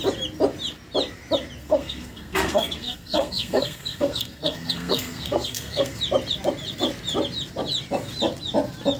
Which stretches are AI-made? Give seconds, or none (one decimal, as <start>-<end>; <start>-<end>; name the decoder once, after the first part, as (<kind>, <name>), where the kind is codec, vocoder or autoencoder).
1.6-6.0 (codec, SNAC)